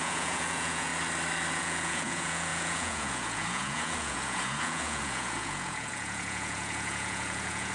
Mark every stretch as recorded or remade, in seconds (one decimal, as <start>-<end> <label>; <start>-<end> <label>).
0.0-0.9 remade; 0.9-1.5 recorded; 1.5-7.7 remade